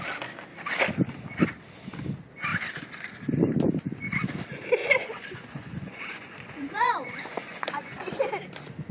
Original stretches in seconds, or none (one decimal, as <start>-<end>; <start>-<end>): 0.0-4.8; 8.3-8.9